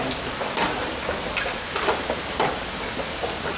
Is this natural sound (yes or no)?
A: yes